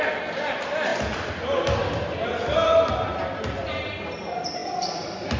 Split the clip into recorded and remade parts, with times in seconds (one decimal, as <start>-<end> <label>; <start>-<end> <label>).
0.0-5.4 recorded